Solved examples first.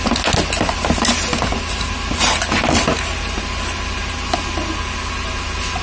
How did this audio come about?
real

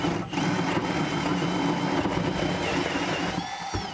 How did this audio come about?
real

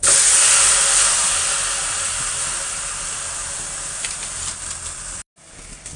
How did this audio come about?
real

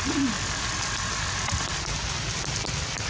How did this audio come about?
real